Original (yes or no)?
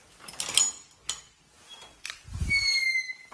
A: yes